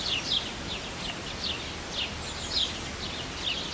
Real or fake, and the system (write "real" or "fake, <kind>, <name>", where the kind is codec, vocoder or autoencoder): real